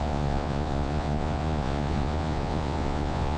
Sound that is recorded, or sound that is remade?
remade